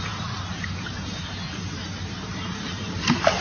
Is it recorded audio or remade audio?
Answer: remade